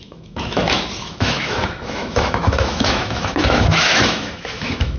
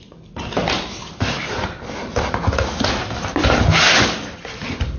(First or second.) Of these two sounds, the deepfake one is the first